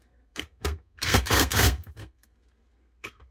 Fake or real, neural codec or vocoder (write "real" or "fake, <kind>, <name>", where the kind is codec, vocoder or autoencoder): fake, codec, SNAC